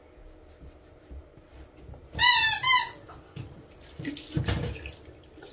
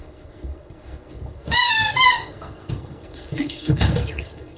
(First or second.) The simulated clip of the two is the second